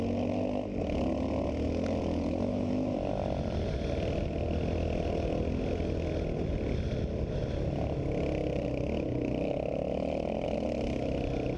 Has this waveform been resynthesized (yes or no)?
no